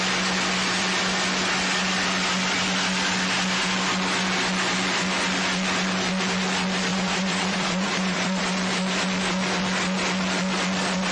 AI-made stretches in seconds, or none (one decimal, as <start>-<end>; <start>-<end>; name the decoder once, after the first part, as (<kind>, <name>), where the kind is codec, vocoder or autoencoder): 6.9-8.4 (vocoder, Vocos)